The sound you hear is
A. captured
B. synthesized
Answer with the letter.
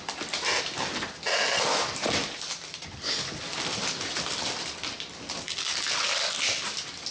A